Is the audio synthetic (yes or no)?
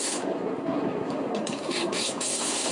yes